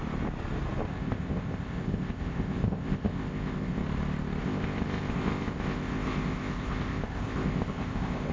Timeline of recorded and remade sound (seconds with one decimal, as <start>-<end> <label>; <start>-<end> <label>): 0.0-0.9 recorded; 0.9-3.8 remade; 3.8-4.4 recorded; 4.4-8.3 remade